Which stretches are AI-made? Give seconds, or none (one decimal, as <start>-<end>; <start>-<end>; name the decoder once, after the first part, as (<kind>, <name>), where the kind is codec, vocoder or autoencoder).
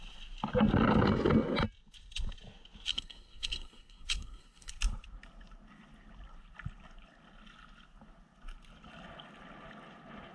2.9-4.7 (codec, SNAC)